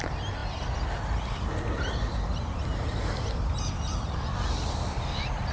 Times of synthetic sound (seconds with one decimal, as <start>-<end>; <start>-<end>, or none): none